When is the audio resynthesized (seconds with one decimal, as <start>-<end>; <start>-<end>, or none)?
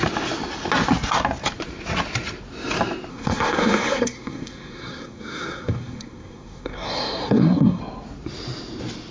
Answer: 3.1-7.8